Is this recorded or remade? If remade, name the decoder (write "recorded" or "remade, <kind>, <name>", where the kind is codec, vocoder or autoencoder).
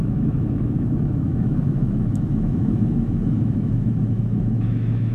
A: remade, autoencoder, DAC-VAE